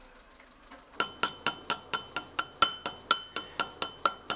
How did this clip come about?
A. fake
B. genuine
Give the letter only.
B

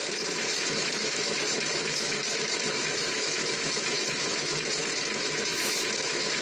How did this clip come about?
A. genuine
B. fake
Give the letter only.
B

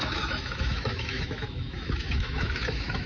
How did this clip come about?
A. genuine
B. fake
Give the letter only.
B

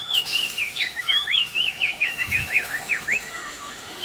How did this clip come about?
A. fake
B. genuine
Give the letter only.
A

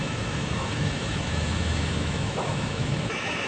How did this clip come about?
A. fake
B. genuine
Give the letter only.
A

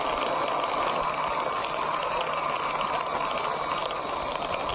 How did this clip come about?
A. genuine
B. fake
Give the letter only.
A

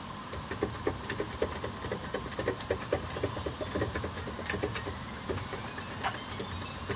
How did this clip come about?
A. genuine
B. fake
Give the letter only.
A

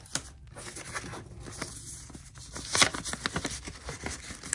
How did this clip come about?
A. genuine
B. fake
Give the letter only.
A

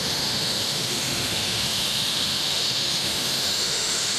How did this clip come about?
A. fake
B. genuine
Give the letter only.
A